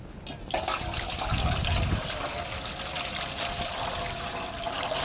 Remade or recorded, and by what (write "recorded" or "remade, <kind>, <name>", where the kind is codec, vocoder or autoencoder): recorded